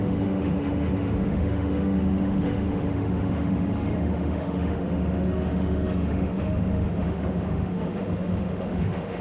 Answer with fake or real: fake